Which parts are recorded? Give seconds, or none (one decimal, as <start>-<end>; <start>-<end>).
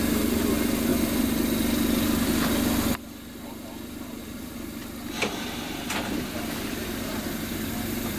0.9-4.2; 4.8-5.3